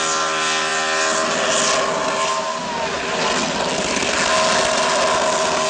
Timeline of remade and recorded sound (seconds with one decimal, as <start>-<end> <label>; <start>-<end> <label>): 0.0-5.7 recorded

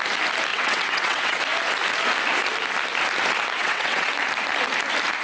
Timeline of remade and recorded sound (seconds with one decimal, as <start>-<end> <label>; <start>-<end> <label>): 0.0-0.5 recorded; 0.5-1.4 remade; 1.4-3.6 recorded; 3.6-4.1 remade; 4.1-5.2 recorded

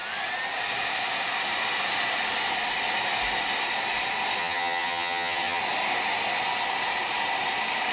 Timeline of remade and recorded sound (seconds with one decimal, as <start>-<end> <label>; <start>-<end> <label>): 0.0-4.4 recorded; 4.4-5.6 remade; 5.6-7.9 recorded

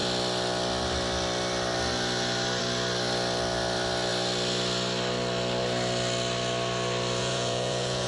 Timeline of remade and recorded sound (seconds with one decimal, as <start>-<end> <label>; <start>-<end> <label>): 0.0-7.2 recorded; 7.2-8.1 remade

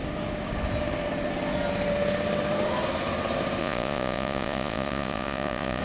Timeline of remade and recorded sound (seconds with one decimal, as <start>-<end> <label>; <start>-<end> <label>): 0.0-3.6 recorded; 3.6-5.8 remade

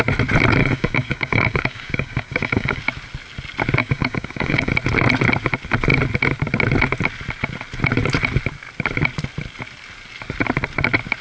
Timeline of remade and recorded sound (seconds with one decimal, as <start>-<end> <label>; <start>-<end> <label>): 0.0-0.6 recorded; 0.6-2.8 remade; 2.8-3.8 recorded; 3.8-4.7 remade; 4.7-11.2 recorded

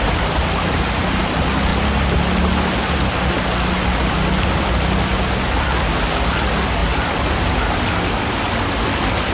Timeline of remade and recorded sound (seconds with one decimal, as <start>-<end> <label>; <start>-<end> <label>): 0.0-6.8 recorded; 6.8-7.8 remade; 7.8-9.3 recorded